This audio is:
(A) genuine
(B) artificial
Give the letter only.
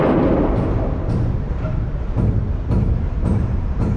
B